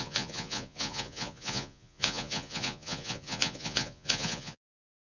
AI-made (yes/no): yes